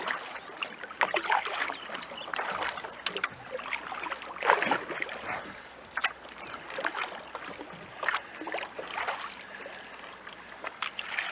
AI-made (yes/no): no